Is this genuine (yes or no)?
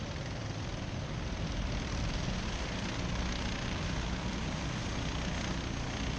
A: yes